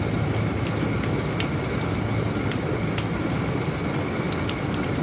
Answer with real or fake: real